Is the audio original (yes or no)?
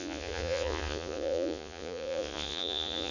no